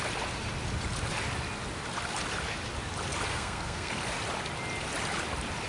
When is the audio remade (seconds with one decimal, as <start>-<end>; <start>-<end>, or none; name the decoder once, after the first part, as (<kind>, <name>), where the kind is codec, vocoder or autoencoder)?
3.3-3.9 (codec, SNAC)